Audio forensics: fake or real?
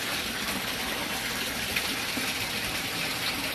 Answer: real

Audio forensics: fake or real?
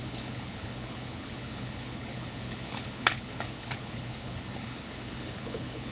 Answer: fake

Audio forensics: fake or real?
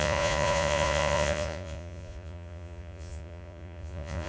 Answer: fake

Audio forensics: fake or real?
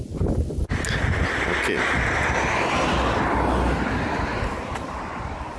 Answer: real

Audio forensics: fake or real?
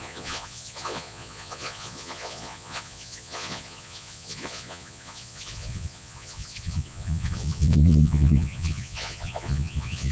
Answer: fake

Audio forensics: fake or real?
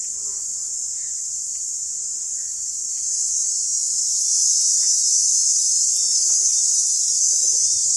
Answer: fake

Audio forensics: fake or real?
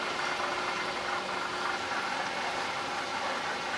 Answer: real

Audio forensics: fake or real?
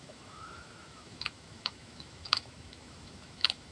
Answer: fake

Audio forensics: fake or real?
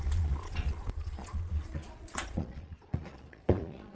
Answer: fake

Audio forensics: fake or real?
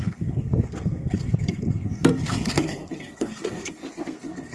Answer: fake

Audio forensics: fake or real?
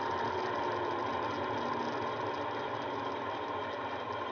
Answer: real